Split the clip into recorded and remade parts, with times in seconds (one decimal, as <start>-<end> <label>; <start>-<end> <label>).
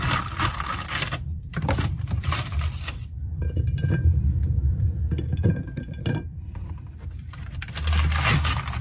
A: 0.0-1.5 recorded; 1.5-6.7 remade; 6.7-8.8 recorded